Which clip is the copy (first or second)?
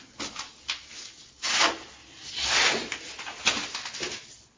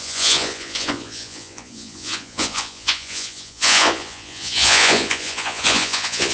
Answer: second